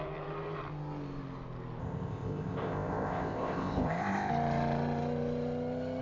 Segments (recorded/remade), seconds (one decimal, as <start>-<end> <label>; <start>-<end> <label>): 0.0-1.8 recorded; 1.8-4.3 remade; 4.3-6.0 recorded

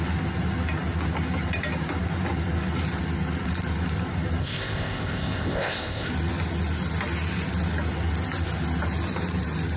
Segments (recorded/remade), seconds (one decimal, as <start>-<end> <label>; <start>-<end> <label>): 0.0-4.4 recorded; 4.4-6.1 remade; 6.1-9.8 recorded